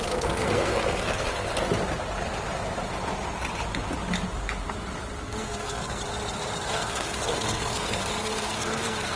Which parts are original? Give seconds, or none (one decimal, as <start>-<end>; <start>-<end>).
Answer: 1.5-5.2; 6.0-6.7